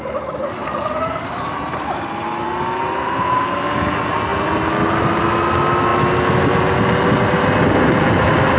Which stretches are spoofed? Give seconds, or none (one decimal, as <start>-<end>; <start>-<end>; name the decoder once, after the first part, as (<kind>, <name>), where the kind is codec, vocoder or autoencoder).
0.6-2.1 (vocoder, BigVGAN v2)